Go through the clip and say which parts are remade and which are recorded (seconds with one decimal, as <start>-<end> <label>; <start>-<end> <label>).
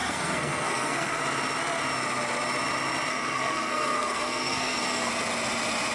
0.0-1.2 remade; 1.2-3.1 recorded; 3.1-5.1 remade; 5.1-5.9 recorded